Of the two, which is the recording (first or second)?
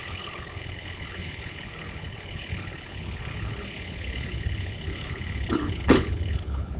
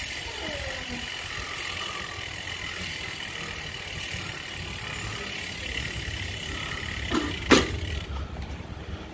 second